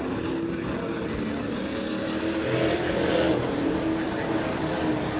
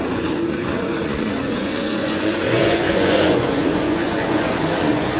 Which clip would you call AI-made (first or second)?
second